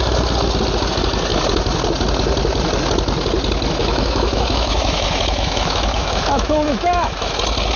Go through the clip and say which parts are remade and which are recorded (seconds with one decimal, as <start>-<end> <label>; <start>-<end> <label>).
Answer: 0.0-3.8 recorded; 3.8-7.3 remade; 7.3-7.8 recorded